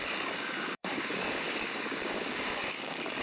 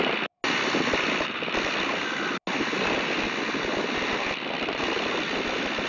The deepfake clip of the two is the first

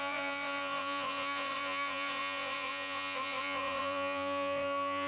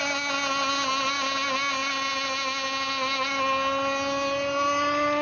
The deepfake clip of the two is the first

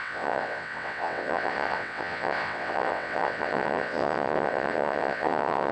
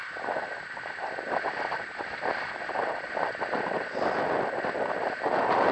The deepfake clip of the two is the first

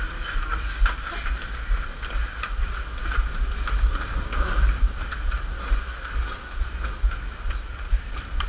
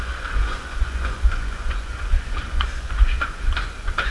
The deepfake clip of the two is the second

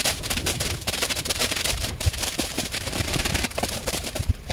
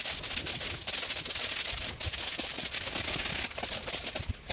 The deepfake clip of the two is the first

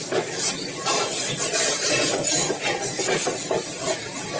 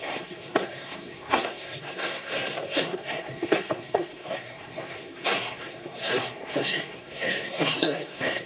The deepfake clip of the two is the second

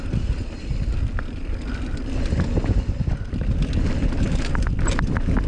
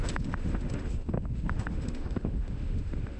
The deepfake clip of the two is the second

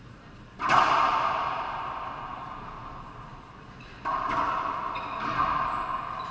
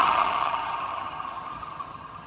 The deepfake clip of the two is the second